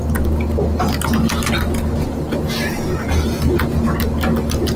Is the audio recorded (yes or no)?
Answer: yes